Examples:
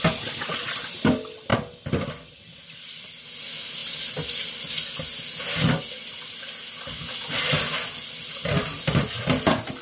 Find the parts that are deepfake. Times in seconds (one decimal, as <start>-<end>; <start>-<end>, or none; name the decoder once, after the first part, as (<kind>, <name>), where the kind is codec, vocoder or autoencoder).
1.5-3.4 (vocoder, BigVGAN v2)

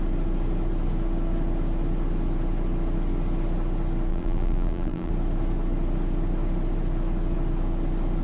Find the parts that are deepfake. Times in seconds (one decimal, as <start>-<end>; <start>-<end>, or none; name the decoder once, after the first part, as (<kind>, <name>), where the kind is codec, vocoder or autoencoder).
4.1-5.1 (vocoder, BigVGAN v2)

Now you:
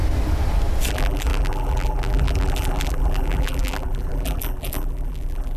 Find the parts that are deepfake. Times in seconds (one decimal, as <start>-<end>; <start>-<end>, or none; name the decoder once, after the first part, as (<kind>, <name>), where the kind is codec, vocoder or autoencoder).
0.9-5.6 (vocoder, BigVGAN v2)

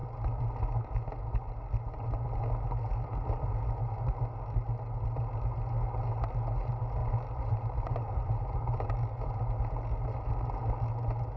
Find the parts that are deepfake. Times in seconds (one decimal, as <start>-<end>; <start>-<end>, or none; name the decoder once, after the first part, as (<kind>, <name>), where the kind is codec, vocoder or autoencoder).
7.0-8.9 (vocoder, BigVGAN v2)

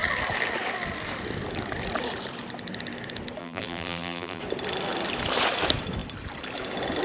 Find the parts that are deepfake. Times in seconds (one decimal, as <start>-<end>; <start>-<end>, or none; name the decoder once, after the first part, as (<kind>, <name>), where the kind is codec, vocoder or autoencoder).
3.4-4.4 (vocoder, BigVGAN v2)